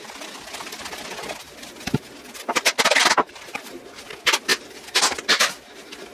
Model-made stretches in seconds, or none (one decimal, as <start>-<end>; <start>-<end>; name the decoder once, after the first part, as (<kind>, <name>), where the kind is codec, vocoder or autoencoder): none